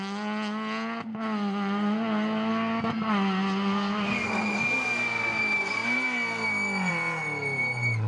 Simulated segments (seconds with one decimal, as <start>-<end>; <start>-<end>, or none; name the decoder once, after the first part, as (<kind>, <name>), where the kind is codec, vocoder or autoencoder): none